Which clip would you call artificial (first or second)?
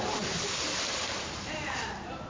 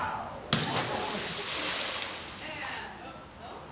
first